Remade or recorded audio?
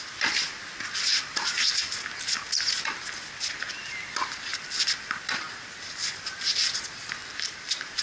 recorded